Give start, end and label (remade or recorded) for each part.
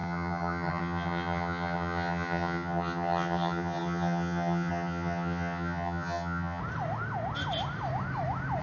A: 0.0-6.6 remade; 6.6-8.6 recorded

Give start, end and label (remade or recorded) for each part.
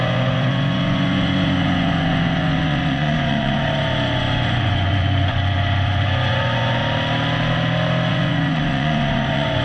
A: 0.0-6.8 remade; 6.8-8.1 recorded; 8.1-9.6 remade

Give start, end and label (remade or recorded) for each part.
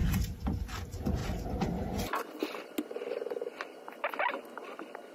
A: 0.0-5.1 recorded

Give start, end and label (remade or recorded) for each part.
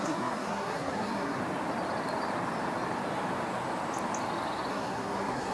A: 0.0-1.4 remade; 1.4-4.7 recorded; 4.7-5.5 remade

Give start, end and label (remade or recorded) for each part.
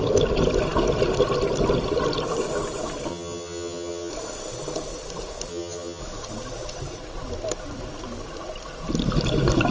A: 0.0-3.1 recorded; 3.1-4.1 remade; 4.1-5.5 recorded; 5.5-6.0 remade; 6.0-9.7 recorded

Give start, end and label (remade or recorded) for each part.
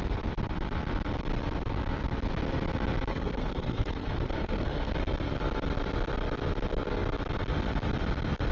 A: 0.0-3.1 recorded; 3.1-4.9 remade; 4.9-8.5 recorded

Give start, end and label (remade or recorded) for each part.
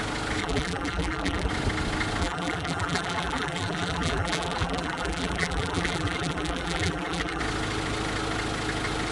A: 0.0-0.4 recorded; 0.4-1.5 remade; 1.5-2.2 recorded; 2.2-7.4 remade; 7.4-9.1 recorded